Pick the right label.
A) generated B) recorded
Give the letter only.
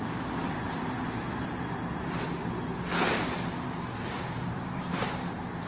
B